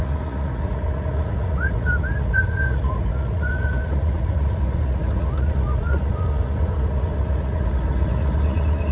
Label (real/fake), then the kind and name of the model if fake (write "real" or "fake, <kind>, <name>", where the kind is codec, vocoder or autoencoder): fake, vocoder, Vocos